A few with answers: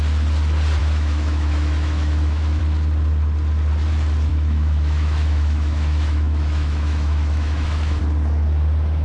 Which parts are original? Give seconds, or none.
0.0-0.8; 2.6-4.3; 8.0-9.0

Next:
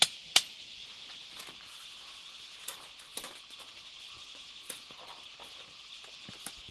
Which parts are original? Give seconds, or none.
0.0-6.7